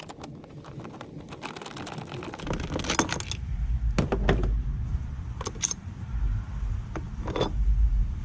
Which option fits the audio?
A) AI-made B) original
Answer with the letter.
B